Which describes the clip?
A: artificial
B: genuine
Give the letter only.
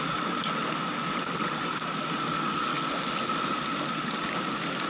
B